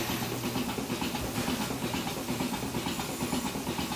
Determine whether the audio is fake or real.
real